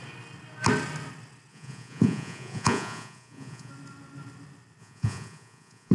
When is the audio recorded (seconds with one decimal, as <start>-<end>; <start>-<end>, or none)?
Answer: 0.0-1.5; 3.7-4.8